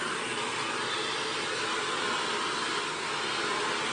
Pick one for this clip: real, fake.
real